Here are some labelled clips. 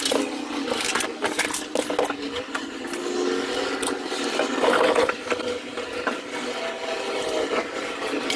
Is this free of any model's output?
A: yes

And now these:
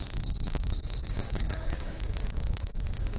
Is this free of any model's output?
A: no